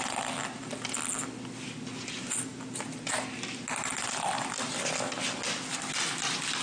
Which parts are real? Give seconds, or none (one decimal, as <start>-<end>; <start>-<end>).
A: 0.0-6.6